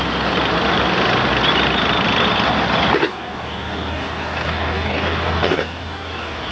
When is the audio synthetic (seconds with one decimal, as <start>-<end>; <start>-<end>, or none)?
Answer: 3.0-6.5